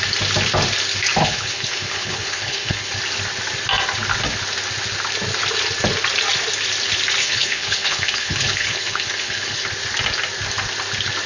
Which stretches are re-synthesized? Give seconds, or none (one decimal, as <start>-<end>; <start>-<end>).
1.2-2.9; 7.2-9.7